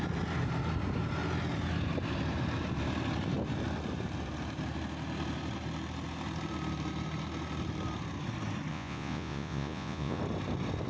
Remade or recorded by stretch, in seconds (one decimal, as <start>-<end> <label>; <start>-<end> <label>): 0.0-8.7 recorded; 8.7-10.2 remade; 10.2-10.9 recorded